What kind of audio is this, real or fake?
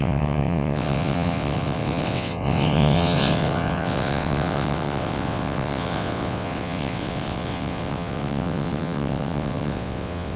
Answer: fake